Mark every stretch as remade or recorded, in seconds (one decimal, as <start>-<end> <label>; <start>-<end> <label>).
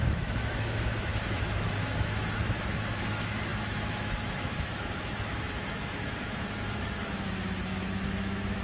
0.0-8.6 remade